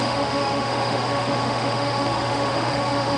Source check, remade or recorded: remade